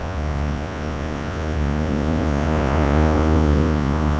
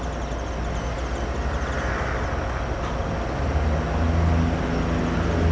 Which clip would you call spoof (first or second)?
first